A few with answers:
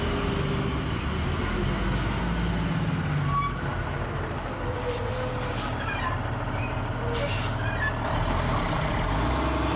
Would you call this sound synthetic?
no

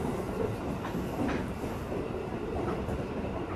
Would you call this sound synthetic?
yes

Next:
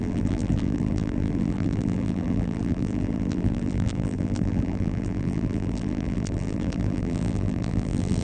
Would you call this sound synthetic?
yes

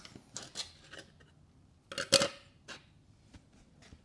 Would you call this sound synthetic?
no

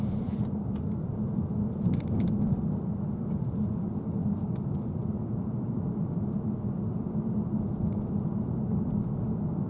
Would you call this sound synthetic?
yes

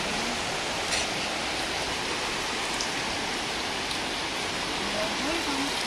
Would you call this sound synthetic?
no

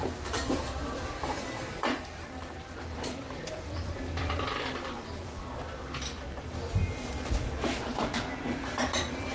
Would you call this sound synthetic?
yes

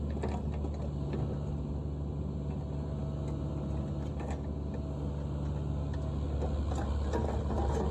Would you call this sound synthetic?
no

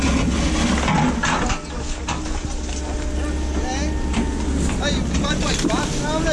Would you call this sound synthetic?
no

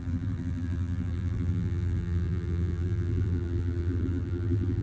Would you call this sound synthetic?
yes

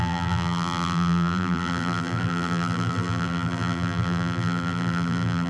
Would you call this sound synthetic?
yes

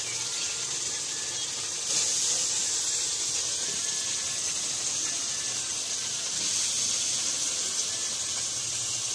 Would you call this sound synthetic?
no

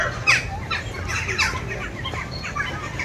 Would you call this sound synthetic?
no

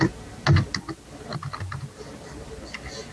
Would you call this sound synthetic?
no